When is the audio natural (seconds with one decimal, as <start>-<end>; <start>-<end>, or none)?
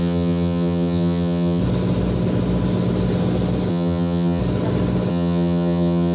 1.6-3.7; 4.4-5.1